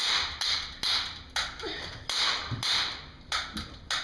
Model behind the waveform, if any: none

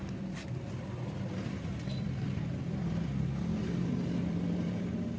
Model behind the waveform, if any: none